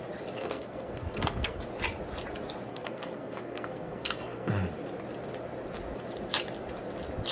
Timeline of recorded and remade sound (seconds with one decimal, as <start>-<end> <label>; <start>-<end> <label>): 0.0-0.4 recorded; 0.4-1.6 remade; 1.6-2.7 recorded; 2.7-4.5 remade; 4.5-7.3 recorded